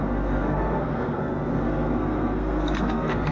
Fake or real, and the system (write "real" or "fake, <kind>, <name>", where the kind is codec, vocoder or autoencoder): fake, codec, SNAC